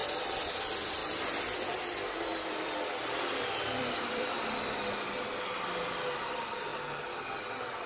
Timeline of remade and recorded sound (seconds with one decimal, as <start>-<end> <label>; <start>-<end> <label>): 0.0-0.6 remade; 0.6-1.0 recorded; 1.0-4.7 remade; 4.7-7.9 recorded